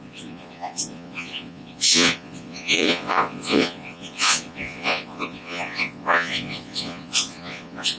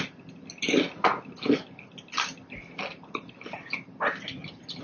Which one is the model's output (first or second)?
first